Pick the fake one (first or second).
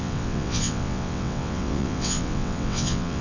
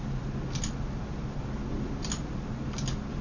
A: first